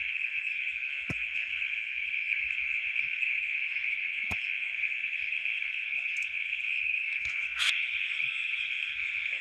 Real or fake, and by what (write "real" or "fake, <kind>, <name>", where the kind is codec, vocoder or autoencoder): fake, codec, SNAC